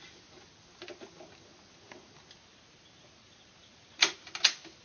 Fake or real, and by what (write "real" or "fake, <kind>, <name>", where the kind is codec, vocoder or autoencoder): real